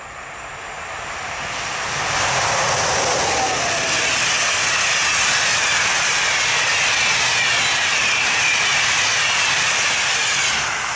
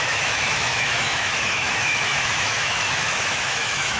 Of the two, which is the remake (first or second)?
second